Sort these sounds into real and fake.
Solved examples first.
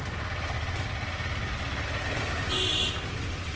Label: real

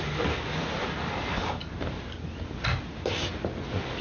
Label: real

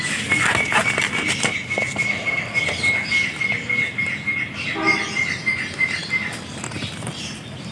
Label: real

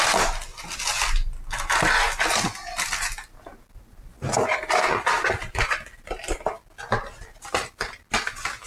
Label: real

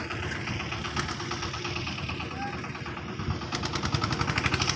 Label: real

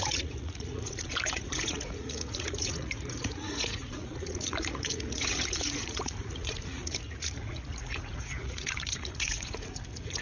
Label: fake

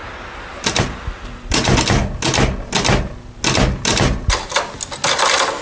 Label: real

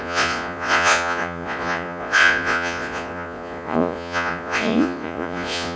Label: fake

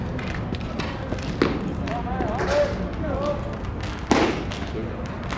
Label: real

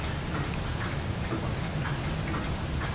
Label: real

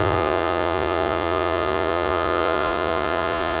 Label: fake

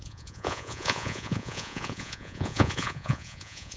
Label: fake